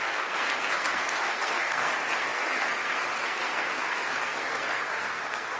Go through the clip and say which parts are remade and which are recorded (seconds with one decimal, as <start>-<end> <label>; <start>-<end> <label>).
0.0-5.6 remade